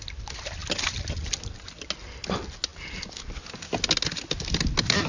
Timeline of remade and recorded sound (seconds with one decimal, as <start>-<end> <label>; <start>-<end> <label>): 0.0-5.1 recorded